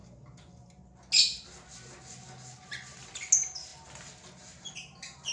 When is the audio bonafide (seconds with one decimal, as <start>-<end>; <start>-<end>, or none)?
0.0-5.3